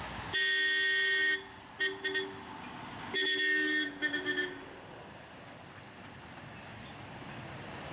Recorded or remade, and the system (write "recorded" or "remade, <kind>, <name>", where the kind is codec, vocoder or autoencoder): recorded